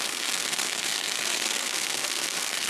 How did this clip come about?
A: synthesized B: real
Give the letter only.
A